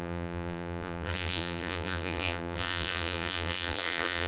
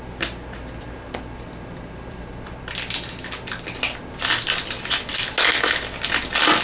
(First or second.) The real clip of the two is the second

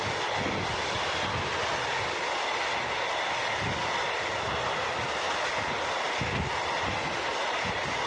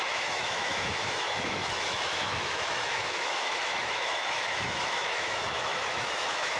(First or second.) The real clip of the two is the first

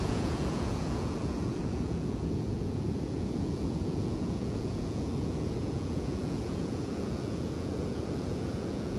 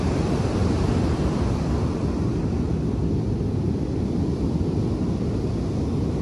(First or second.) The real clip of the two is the second